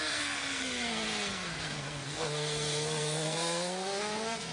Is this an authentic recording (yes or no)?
no